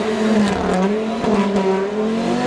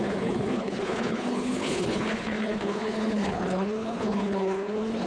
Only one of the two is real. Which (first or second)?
first